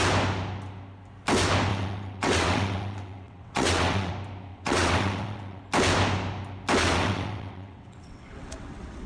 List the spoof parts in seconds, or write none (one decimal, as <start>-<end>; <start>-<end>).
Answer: 1.7-4.1; 4.5-5.6; 6.8-9.1